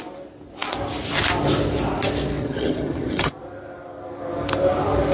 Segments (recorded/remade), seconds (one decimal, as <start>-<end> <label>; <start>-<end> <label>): 0.0-2.4 recorded; 2.4-3.3 remade; 3.3-5.1 recorded